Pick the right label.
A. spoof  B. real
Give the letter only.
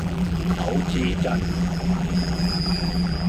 A